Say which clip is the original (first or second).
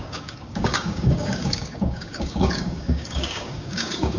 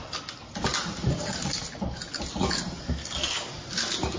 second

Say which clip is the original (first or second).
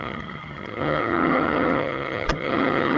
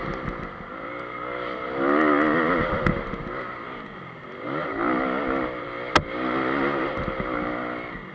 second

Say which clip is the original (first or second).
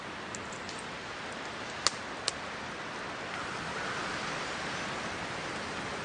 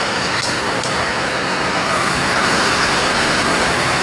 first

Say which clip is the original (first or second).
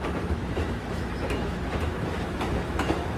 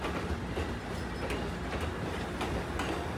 second